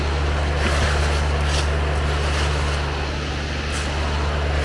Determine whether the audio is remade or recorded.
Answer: recorded